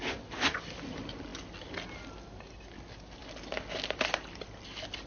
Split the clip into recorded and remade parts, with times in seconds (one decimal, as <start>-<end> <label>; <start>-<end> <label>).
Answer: 0.0-5.1 recorded